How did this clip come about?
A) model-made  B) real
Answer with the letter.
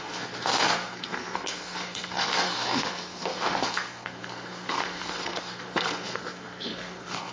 A